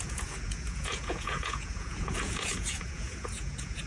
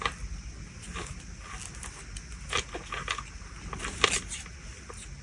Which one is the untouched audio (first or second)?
second